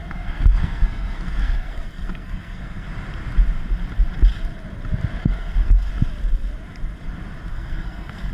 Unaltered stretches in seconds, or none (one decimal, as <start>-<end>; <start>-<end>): 2.9-5.2; 5.9-7.5

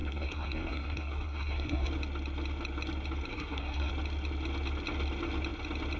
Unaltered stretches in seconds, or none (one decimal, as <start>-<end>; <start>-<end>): 1.9-3.3; 3.9-6.0

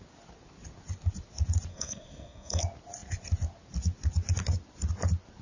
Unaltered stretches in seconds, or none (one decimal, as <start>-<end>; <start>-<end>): 0.0-1.7; 2.6-5.4